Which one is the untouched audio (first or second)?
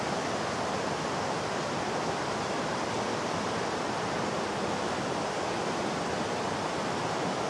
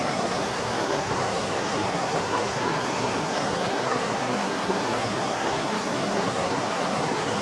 first